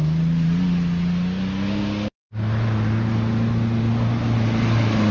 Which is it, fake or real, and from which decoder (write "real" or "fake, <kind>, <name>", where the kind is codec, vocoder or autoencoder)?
real